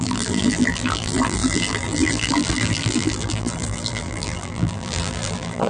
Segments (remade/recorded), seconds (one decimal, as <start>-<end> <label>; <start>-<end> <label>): 0.0-5.7 remade